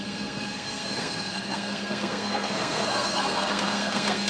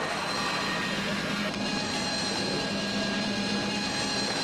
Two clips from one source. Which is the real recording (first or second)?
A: second